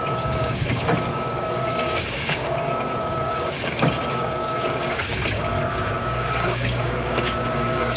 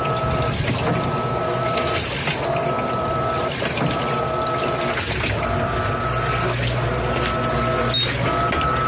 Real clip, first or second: second